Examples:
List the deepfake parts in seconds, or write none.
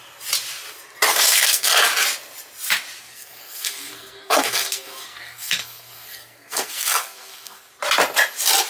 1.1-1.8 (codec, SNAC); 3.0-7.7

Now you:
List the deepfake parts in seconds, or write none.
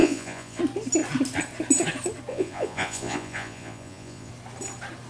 0.0-0.6 (vocoder, Vocos); 2.3-4.3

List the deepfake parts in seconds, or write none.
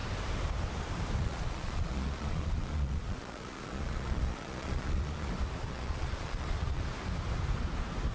1.2-5.3 (vocoder, Vocos); 5.7-6.8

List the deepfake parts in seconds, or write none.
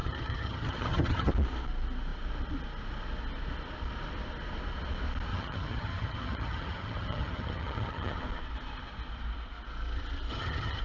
0.0-1.3 (vocoder, HiFi-GAN); 5.3-8.2; 10.3-10.8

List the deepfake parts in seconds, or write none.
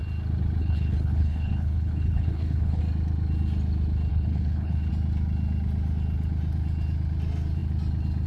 0.6-2.8 (codec, HILCodec); 4.1-4.9